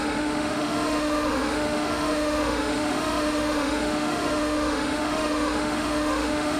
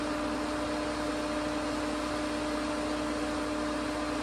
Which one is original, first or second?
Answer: second